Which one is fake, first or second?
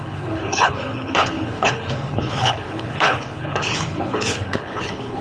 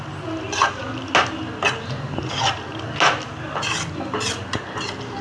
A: first